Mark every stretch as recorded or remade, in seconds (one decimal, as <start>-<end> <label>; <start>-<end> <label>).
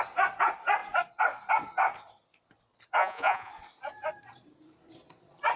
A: 0.0-3.0 recorded; 3.0-3.5 remade; 3.5-5.6 recorded